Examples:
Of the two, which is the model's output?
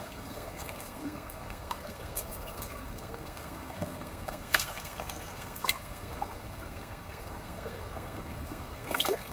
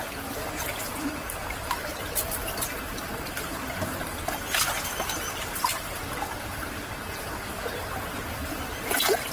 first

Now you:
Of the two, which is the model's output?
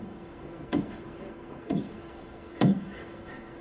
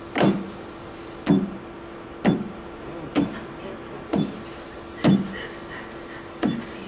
first